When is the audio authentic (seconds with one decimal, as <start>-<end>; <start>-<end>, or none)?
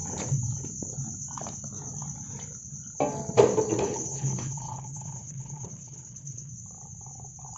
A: 0.0-3.8; 6.5-7.6